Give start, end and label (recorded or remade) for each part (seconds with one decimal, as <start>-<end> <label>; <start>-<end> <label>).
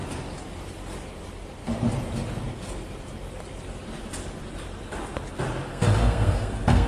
0.0-5.7 recorded; 5.7-6.9 remade